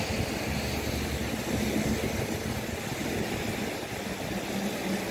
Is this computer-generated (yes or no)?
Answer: no